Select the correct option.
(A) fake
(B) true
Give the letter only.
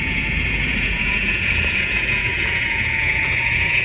A